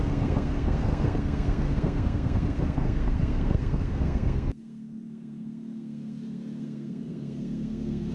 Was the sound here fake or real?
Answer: fake